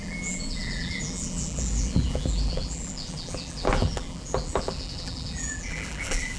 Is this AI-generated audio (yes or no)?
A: yes